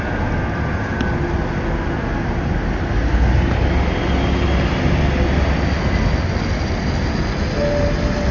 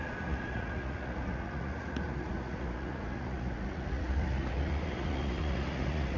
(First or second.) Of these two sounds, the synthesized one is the second